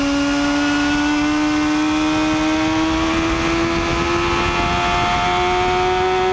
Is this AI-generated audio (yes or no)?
no